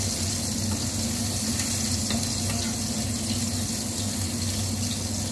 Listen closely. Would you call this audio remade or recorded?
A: recorded